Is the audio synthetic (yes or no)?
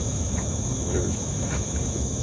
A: yes